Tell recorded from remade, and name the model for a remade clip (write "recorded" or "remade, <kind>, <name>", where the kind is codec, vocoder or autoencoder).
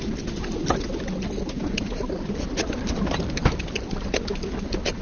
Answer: recorded